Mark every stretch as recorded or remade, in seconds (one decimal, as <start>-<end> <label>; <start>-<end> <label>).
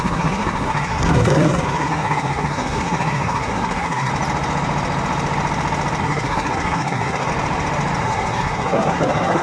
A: 0.0-4.1 remade; 4.1-6.0 recorded; 6.0-7.3 remade; 7.3-8.0 recorded; 8.0-9.4 remade